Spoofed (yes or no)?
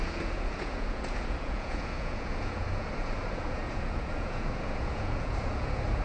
yes